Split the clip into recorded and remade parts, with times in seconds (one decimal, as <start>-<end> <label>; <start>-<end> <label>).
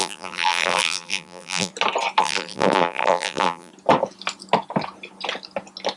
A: 0.0-1.7 remade; 1.7-2.2 recorded; 2.2-3.7 remade; 3.7-6.0 recorded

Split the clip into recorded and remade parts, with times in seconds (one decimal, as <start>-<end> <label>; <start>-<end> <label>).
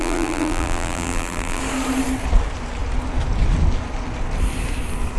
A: 0.0-1.6 remade; 1.6-5.2 recorded